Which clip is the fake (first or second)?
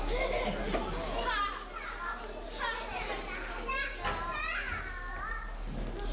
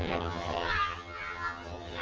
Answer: second